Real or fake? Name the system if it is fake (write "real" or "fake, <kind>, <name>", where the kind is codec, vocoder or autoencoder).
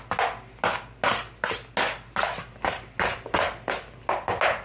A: real